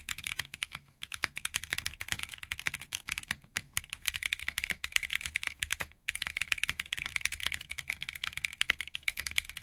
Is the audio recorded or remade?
remade